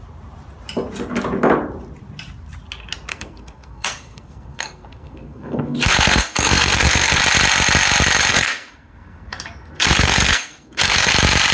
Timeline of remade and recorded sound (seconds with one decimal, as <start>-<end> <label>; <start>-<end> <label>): 0.0-3.1 recorded; 3.1-7.2 remade; 7.2-8.3 recorded; 8.3-11.1 remade; 11.1-11.5 recorded